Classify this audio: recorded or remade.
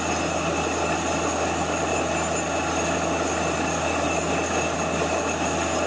recorded